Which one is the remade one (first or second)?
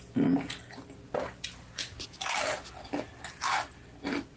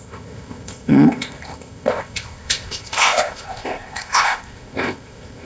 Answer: second